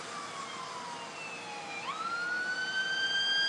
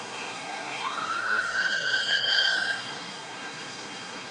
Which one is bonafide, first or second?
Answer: first